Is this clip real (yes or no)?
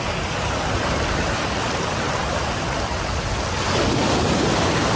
yes